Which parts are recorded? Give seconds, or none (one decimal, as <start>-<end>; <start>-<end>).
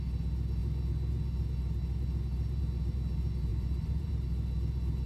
0.0-3.5; 4.1-5.1